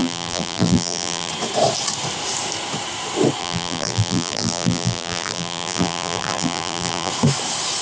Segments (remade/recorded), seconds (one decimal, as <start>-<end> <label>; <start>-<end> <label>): 0.0-1.3 remade; 1.3-3.4 recorded; 3.4-7.1 remade; 7.1-7.8 recorded